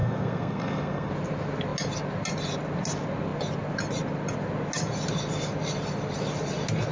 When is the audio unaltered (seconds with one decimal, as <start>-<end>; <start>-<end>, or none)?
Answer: 1.1-6.9

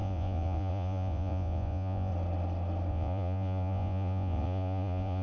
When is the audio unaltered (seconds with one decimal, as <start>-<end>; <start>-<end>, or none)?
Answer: 2.1-2.9

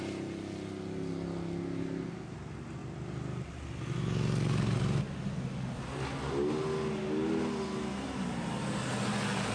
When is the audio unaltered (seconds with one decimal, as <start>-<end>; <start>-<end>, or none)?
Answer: 0.0-9.5

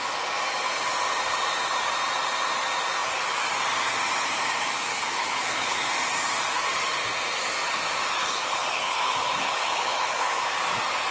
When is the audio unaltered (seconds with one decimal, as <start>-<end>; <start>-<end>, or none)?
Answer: 0.0-4.9; 5.9-8.2; 10.4-11.1